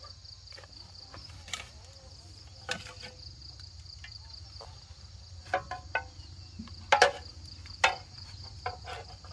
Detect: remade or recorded recorded